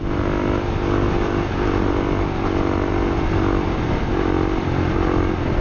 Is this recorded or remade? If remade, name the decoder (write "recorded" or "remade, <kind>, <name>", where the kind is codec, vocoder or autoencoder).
recorded